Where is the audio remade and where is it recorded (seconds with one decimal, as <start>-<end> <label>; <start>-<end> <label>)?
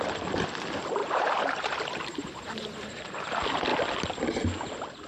0.0-1.0 recorded; 1.0-3.2 remade; 3.2-5.1 recorded